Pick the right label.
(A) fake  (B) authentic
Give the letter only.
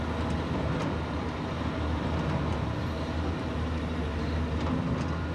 B